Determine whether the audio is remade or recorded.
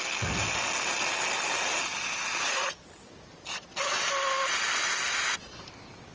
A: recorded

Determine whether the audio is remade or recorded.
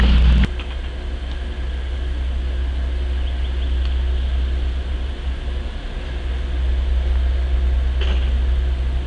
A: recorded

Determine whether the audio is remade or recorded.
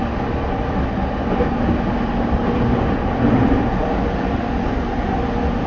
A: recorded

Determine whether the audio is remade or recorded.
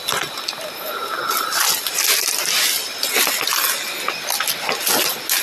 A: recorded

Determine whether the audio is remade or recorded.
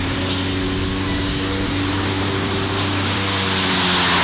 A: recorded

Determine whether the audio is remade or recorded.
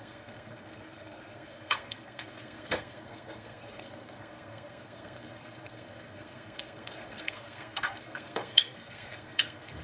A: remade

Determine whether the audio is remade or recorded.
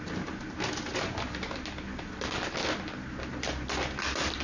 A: recorded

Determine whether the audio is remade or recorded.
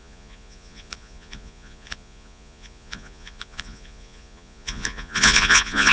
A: remade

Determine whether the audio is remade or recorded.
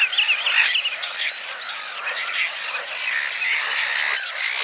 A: recorded